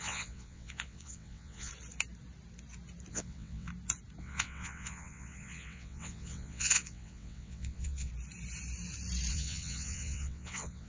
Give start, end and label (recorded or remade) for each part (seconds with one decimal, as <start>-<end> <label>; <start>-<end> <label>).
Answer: 0.0-1.7 remade; 1.7-3.1 recorded; 3.1-3.7 remade; 3.7-4.2 recorded; 4.2-8.1 remade; 8.1-9.3 recorded; 9.3-10.9 remade